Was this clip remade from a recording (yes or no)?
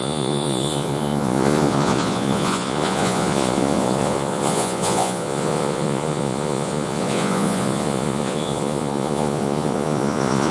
yes